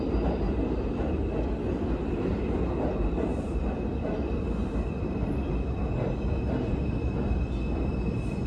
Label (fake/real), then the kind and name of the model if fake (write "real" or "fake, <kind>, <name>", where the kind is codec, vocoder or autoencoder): real